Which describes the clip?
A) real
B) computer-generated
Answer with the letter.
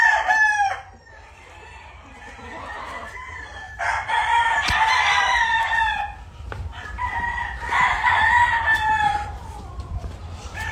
B